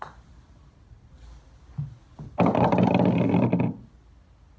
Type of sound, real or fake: real